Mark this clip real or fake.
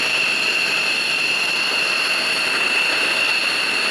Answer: real